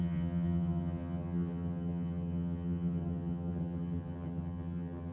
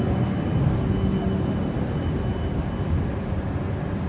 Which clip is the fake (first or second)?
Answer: first